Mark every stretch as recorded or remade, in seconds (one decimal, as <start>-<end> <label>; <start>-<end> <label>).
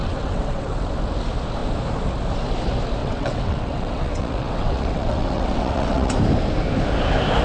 0.0-0.9 remade; 0.9-3.0 recorded; 3.0-6.1 remade; 6.1-7.4 recorded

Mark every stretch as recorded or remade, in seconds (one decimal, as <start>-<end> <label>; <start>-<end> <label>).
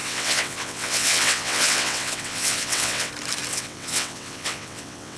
0.0-3.1 remade; 3.1-3.5 recorded; 3.5-5.2 remade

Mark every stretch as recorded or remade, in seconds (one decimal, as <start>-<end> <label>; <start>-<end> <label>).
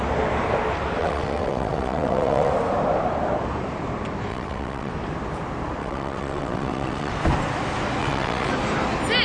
0.0-1.0 recorded; 1.0-2.5 remade; 2.5-4.3 recorded; 4.3-4.9 remade; 4.9-5.8 recorded; 5.8-7.1 remade; 7.1-8.0 recorded; 8.0-8.5 remade; 8.5-9.2 recorded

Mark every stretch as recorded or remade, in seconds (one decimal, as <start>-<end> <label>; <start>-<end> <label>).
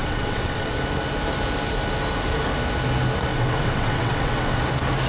0.0-0.8 remade; 0.8-3.3 recorded; 3.3-4.6 remade; 4.6-5.1 recorded